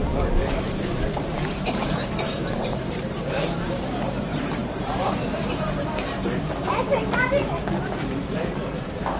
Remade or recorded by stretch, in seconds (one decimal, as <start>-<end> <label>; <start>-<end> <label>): 0.0-9.2 remade